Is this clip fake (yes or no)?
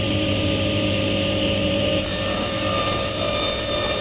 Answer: yes